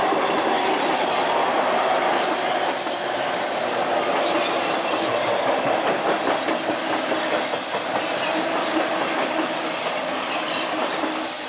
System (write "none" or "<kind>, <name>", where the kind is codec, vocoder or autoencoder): none